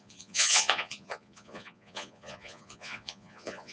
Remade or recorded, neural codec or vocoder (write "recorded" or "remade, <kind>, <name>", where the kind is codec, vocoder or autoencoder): remade, vocoder, Vocos